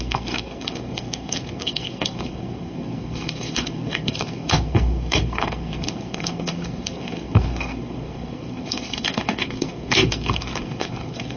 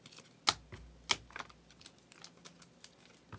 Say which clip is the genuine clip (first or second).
second